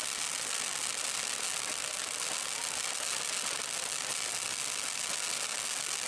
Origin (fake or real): real